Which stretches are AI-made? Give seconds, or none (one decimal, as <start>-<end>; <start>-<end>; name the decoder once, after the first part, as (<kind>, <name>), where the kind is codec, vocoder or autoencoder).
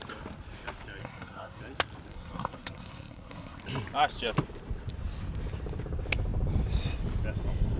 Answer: 1.0-1.6 (codec, SNAC); 2.1-3.6